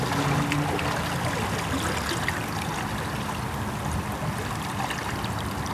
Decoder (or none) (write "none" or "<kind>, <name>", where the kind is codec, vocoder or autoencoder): none